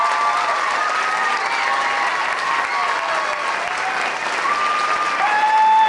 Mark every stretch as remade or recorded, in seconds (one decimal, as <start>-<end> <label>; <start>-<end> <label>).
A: 0.0-5.9 recorded